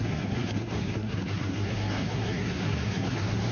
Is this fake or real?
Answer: fake